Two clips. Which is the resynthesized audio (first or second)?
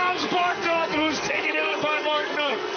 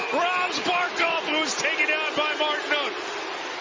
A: first